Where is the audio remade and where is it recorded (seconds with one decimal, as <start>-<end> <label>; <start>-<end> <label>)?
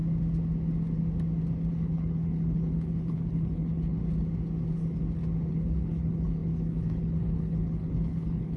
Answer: 0.0-1.7 recorded; 1.7-4.0 remade; 4.0-5.5 recorded; 5.5-8.6 remade